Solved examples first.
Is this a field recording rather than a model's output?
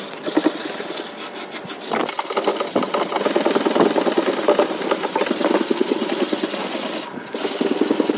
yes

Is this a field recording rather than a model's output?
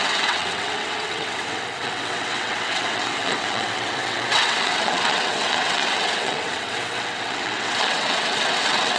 no